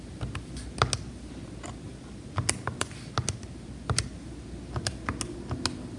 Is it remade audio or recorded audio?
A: recorded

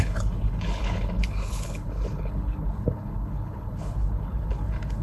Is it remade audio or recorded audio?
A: remade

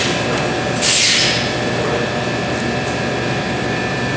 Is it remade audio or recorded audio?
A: recorded